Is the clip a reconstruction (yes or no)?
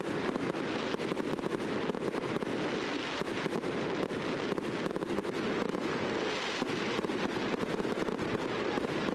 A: no